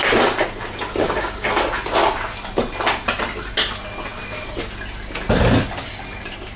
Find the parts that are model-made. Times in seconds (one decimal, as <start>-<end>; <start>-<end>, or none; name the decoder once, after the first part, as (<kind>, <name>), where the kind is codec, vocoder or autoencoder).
1.0-1.6 (codec, DAC)